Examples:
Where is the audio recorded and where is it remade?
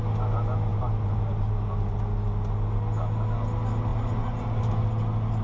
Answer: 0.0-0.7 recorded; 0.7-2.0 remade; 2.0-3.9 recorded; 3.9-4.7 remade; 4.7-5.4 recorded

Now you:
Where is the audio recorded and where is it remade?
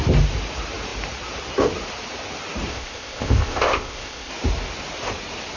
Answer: 0.0-2.7 recorded; 2.7-4.3 remade; 4.3-5.6 recorded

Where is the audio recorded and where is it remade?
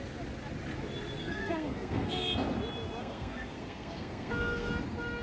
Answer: 0.0-1.2 recorded; 1.2-2.2 remade; 2.2-3.0 recorded; 3.0-4.7 remade; 4.7-5.2 recorded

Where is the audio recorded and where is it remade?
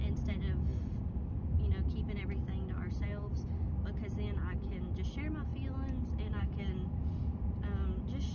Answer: 0.0-8.3 recorded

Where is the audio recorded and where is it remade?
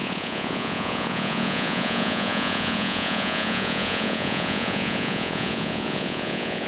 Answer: 0.0-6.7 remade